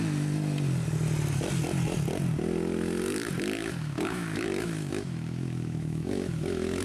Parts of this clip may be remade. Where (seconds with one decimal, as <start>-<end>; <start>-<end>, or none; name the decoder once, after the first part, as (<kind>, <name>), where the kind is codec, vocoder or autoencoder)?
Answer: 3.6-6.8 (autoencoder, DAC-VAE)